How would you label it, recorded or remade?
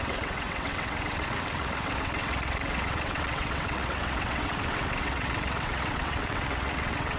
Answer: remade